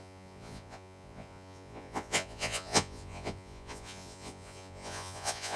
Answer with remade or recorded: remade